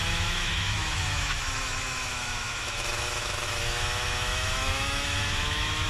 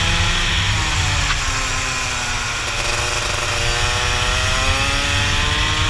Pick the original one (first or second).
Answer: second